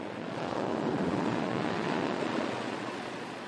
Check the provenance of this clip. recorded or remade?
remade